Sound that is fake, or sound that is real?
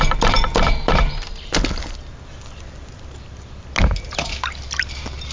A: real